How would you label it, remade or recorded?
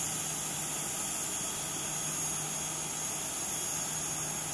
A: recorded